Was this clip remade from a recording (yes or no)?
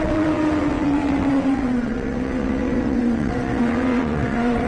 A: yes